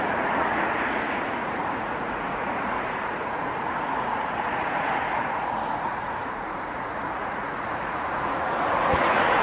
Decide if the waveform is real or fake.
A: fake